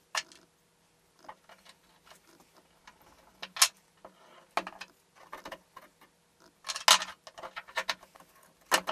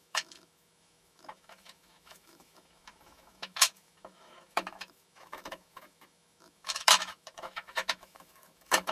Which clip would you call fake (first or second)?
second